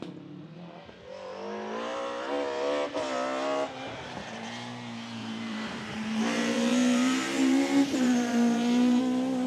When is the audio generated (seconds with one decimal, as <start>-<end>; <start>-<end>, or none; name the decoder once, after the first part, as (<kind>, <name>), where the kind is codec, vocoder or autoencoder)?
5.2-9.0 (vocoder, BigVGAN v2)